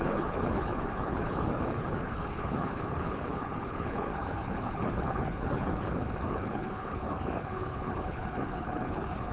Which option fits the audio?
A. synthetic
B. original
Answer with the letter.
A